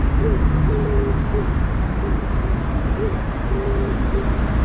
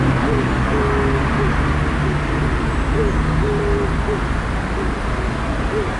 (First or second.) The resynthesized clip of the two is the first